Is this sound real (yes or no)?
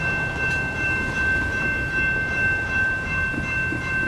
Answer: yes